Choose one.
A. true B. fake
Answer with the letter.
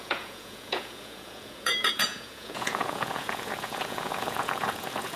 B